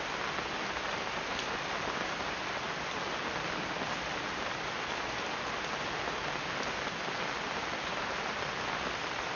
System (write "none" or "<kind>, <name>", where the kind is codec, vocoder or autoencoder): none